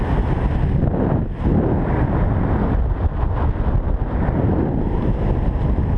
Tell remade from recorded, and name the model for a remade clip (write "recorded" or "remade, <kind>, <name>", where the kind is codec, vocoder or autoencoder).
recorded